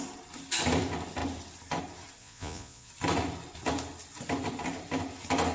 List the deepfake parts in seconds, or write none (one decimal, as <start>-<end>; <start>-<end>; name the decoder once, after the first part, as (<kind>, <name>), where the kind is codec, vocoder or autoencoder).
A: 2.2-2.9 (vocoder, Vocos)